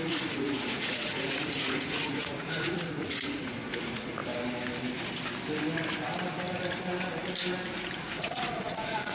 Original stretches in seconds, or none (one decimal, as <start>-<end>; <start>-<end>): 4.2-8.2